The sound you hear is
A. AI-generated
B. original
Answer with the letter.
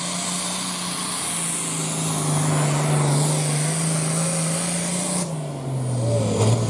B